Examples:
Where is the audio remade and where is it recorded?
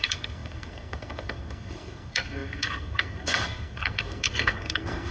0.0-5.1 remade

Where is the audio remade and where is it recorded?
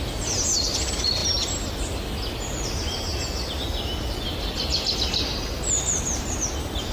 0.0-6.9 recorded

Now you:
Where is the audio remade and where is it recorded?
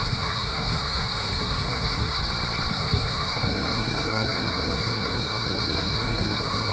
0.0-2.2 remade; 2.2-2.7 recorded; 2.7-6.7 remade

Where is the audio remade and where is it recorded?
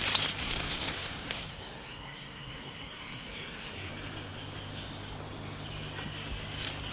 0.0-0.4 recorded; 0.4-3.9 remade; 3.9-6.9 recorded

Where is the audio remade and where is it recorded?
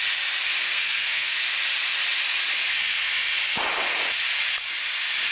0.0-0.6 recorded; 0.6-1.4 remade; 1.4-5.3 recorded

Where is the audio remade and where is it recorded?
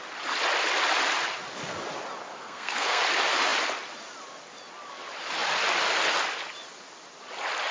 0.0-2.3 recorded; 2.3-3.0 remade; 3.0-7.7 recorded